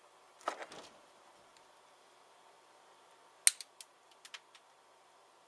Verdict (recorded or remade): recorded